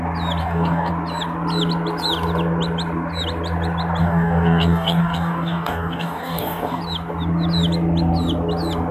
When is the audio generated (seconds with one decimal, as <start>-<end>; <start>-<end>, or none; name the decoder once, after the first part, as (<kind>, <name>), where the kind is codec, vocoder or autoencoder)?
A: 0.4-0.9 (codec, DAC); 4.0-6.8